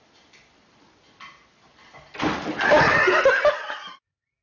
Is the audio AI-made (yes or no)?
no